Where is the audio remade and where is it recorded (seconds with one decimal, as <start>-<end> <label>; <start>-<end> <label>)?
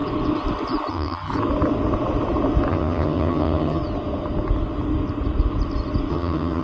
0.0-0.9 recorded; 0.9-1.3 remade; 1.3-2.7 recorded; 2.7-3.8 remade; 3.8-6.1 recorded; 6.1-6.6 remade